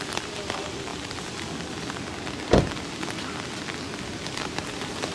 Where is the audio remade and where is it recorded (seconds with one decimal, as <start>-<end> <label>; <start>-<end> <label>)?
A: 0.0-0.9 remade; 0.9-4.0 recorded; 4.0-5.1 remade